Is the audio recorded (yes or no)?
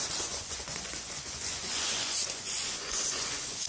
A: no